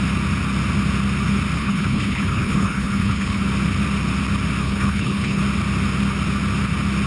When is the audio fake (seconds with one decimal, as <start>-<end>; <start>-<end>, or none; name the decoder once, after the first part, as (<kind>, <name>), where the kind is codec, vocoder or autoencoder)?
1.6-3.4 (codec, HILCodec); 4.6-5.4